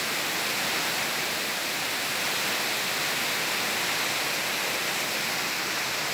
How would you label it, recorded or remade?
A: recorded